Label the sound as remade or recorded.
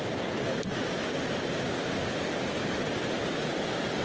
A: recorded